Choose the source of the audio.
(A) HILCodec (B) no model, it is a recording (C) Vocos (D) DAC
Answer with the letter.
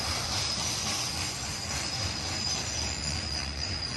C